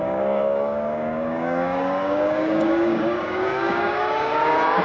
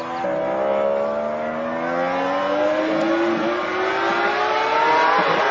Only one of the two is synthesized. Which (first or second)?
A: first